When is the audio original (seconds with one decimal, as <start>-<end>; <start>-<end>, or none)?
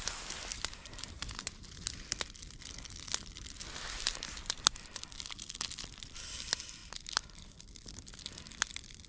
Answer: 0.0-0.5; 2.0-6.8; 7.7-9.1